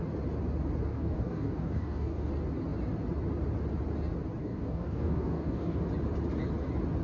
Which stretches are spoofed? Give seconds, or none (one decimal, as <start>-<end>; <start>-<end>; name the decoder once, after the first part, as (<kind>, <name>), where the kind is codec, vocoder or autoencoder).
0.9-2.3 (codec, DAC); 4.4-5.8